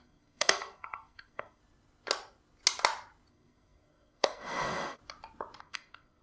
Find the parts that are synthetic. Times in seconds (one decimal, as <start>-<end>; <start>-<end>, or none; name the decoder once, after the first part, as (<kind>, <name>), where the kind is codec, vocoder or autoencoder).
0.0-1.6 (codec, SNAC); 3.3-5.0; 5.6-6.2